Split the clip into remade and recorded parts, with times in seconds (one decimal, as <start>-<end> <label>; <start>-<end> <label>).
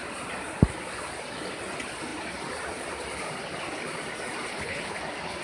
0.0-4.5 recorded; 4.5-5.0 remade; 5.0-5.4 recorded